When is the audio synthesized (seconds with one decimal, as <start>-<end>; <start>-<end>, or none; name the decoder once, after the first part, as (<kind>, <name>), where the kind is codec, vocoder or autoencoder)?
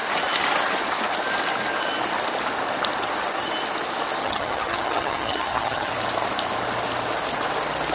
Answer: 4.2-5.9 (vocoder, HiFi-GAN)